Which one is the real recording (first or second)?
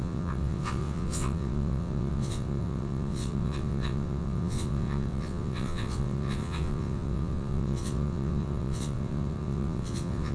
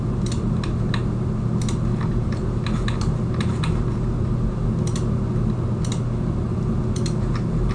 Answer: second